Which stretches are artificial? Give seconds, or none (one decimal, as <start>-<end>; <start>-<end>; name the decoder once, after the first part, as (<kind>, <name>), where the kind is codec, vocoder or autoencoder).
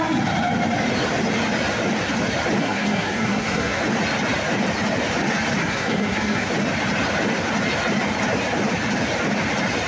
2.6-3.8 (codec, SNAC); 5.6-6.5